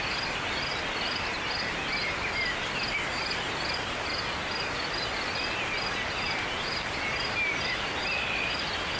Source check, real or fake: real